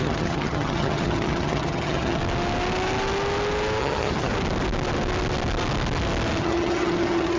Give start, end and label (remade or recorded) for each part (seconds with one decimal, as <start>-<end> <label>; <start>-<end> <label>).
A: 0.0-2.2 remade; 2.2-3.8 recorded; 3.8-4.3 remade; 4.3-6.4 recorded; 6.4-7.4 remade

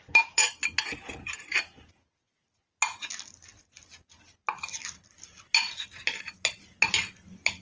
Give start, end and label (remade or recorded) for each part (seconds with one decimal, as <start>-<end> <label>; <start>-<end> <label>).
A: 0.0-7.6 recorded

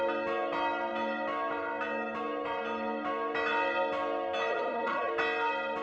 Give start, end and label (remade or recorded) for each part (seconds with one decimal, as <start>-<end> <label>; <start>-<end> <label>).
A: 0.0-4.5 recorded; 4.5-5.1 remade; 5.1-5.8 recorded

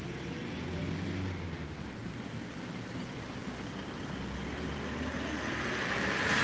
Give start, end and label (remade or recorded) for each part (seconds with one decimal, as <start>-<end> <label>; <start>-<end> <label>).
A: 0.0-6.4 recorded